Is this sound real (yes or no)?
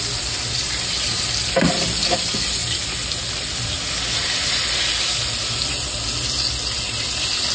yes